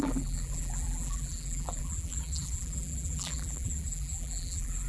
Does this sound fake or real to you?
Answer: fake